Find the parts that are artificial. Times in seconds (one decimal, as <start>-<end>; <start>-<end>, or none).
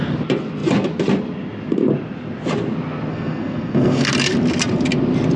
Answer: 3.1-4.1